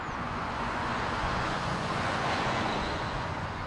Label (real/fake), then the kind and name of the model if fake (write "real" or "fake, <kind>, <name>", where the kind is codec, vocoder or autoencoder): fake, vocoder, Vocos